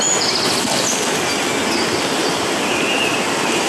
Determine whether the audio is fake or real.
real